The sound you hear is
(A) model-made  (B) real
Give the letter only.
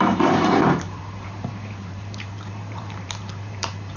A